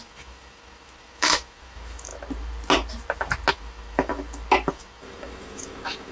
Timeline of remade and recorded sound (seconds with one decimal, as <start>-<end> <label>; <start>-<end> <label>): 0.0-2.1 remade; 2.1-3.5 recorded; 3.5-4.1 remade; 4.1-4.7 recorded; 4.7-6.1 remade